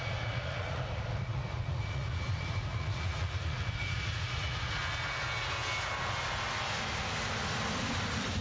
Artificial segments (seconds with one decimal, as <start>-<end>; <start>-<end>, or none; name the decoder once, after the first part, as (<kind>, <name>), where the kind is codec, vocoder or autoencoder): 0.0-4.8 (vocoder, Vocos)